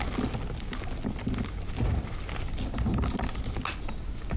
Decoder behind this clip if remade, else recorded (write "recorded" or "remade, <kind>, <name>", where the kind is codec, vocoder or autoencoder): recorded